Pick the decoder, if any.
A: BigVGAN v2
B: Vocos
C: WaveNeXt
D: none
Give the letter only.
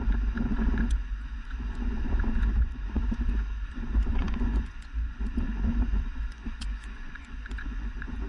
B